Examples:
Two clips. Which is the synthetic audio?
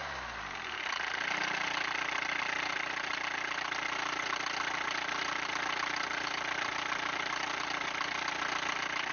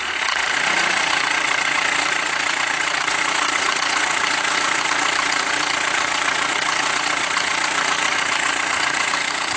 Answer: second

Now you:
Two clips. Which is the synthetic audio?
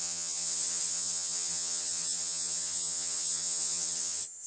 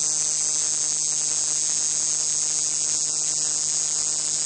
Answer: first